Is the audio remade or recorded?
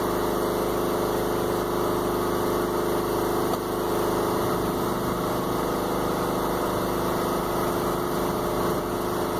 recorded